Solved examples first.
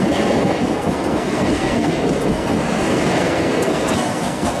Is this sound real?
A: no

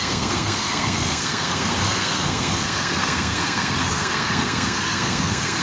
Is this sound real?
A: no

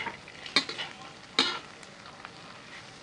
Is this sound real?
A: yes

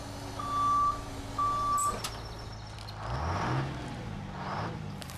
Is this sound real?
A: yes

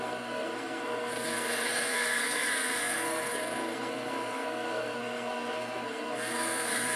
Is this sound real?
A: no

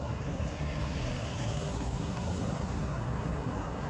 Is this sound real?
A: no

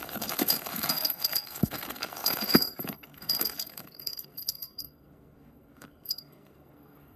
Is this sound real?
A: no